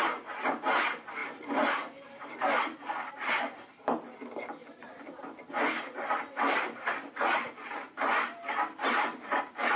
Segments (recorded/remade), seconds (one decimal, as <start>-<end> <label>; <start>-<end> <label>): 0.0-1.2 recorded; 1.2-3.1 remade; 3.1-4.6 recorded; 4.6-9.4 remade; 9.4-9.8 recorded